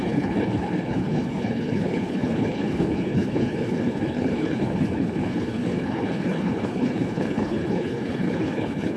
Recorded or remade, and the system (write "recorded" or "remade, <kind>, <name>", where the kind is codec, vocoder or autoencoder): remade, codec, HILCodec